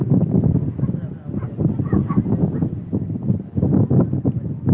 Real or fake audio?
real